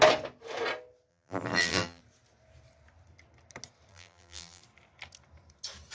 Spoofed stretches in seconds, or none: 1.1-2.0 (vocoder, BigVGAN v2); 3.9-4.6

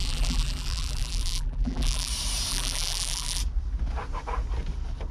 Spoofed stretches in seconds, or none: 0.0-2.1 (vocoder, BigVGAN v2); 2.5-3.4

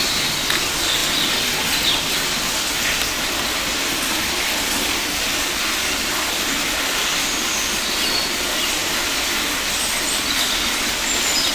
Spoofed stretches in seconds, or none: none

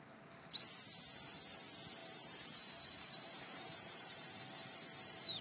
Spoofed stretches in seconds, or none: 2.0-4.4 (vocoder, BigVGAN v2)

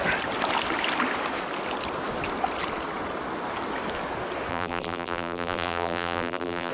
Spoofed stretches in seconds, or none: 4.5-6.7 (vocoder, BigVGAN v2)

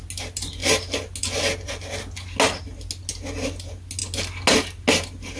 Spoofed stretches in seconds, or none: none